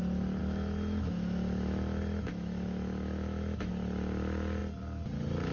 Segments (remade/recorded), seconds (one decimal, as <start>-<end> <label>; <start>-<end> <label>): 0.0-0.4 recorded; 0.4-3.7 remade; 3.7-5.5 recorded